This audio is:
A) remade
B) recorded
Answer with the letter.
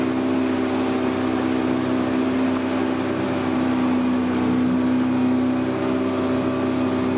B